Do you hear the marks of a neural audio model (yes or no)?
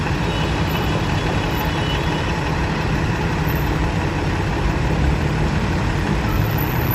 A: yes